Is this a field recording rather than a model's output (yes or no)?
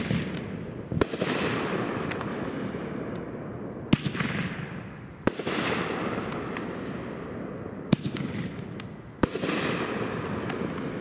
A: yes